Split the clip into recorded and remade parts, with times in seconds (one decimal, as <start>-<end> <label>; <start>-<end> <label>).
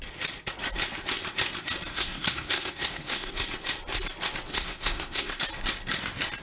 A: 0.0-1.9 recorded; 1.9-3.3 remade; 3.3-4.5 recorded; 4.5-5.4 remade; 5.4-6.4 recorded